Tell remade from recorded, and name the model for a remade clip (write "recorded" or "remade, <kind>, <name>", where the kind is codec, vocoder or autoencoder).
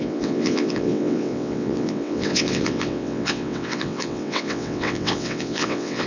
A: remade, vocoder, WaveNeXt